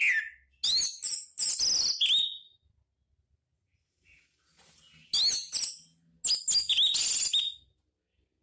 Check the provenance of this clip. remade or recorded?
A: recorded